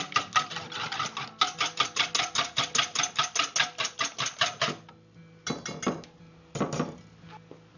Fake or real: real